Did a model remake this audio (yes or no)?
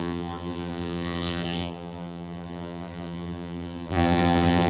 yes